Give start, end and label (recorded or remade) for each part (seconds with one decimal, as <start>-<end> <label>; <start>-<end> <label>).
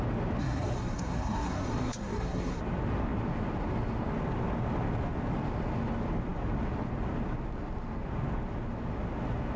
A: 0.0-0.4 recorded; 0.4-2.6 remade; 2.6-9.6 recorded